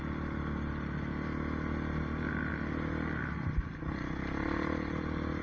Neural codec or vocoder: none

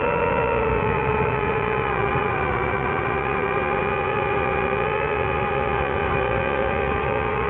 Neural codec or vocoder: vocoder, Vocos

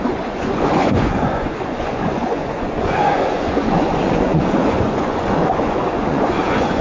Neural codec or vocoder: vocoder, Vocos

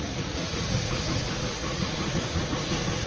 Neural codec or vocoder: vocoder, Vocos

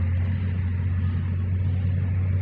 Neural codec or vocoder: none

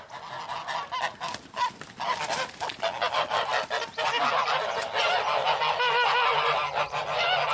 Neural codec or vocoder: none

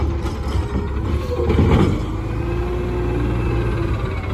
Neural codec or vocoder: none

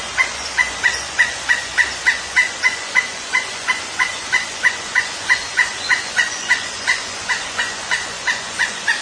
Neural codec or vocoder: vocoder, Vocos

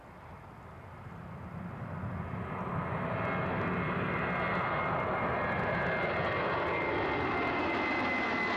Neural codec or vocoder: none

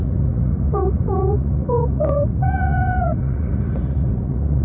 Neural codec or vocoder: vocoder, Vocos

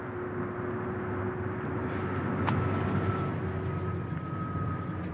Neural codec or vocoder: none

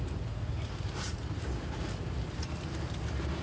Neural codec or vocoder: none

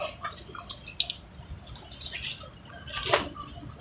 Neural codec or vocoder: none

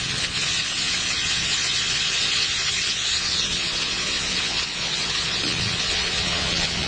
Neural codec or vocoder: vocoder, Vocos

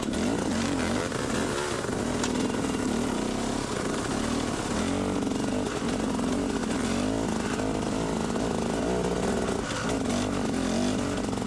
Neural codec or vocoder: none